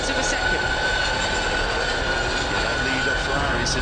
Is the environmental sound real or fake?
real